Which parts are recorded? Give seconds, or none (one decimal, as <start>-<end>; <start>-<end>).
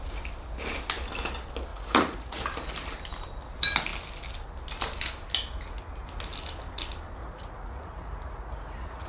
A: 0.0-1.7; 2.4-7.2